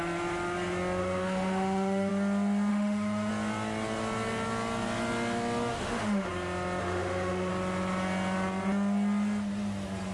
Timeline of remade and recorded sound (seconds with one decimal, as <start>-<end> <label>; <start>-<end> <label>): 0.0-1.0 recorded; 1.0-2.1 remade; 2.1-2.7 recorded; 2.7-3.3 remade; 3.3-5.7 recorded; 5.7-6.3 remade; 6.3-6.8 recorded; 6.8-7.5 remade; 7.5-10.1 recorded